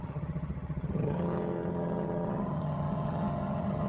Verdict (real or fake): fake